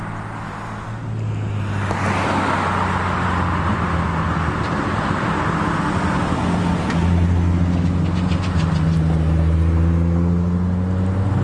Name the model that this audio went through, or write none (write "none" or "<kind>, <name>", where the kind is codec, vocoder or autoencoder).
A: none